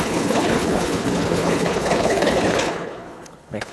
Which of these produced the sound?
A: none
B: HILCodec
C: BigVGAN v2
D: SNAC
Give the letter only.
B